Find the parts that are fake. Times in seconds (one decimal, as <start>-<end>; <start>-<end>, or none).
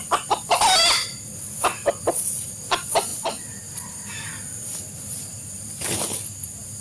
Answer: 3.1-6.8